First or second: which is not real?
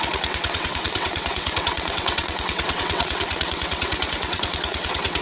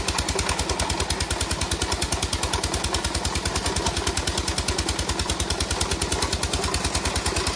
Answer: first